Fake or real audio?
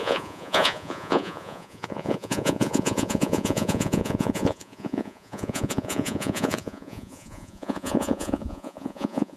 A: fake